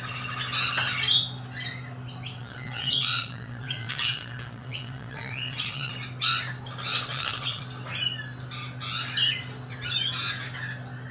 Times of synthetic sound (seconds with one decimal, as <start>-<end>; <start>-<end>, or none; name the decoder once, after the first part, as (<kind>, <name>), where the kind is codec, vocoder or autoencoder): 2.4-5.9 (vocoder, WaveNeXt); 7.1-7.6